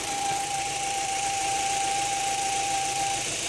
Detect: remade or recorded remade